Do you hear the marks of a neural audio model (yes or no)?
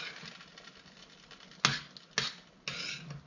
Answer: no